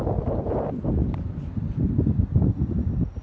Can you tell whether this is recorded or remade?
recorded